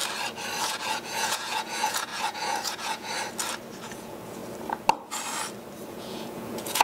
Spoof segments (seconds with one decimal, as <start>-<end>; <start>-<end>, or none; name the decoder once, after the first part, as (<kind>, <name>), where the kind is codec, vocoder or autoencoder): 0.6-3.1 (vocoder, Vocos); 3.8-4.4; 5.9-6.8